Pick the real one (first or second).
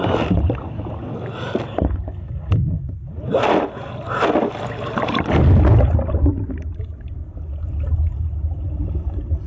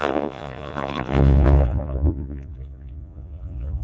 first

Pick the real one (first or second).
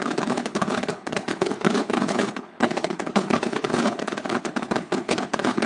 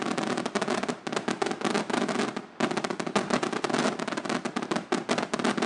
second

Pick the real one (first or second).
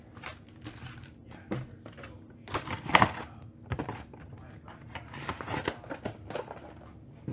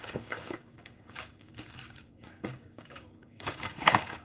first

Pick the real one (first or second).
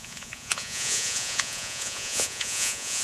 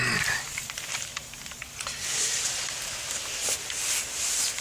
second